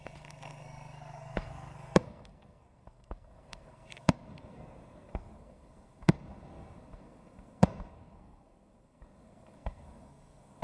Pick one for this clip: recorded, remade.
remade